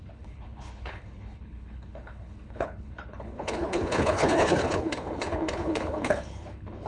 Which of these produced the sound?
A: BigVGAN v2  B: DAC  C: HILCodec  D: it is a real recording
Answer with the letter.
C